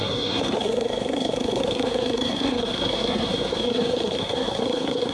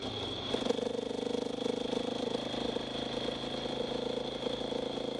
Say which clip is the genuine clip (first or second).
second